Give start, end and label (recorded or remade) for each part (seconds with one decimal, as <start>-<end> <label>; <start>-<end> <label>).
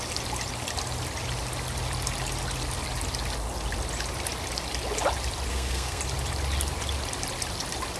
0.0-5.5 recorded; 5.5-6.0 remade; 6.0-8.0 recorded